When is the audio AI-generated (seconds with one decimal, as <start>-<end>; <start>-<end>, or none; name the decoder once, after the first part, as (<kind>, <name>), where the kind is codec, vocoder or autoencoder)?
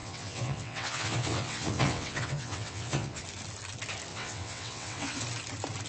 0.0-3.2 (vocoder, WaveNeXt); 4.1-5.2